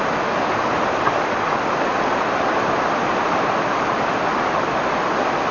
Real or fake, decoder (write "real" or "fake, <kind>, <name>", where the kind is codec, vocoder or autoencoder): real